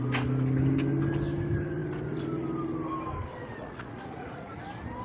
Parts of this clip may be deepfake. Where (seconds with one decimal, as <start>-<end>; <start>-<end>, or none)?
3.4-4.6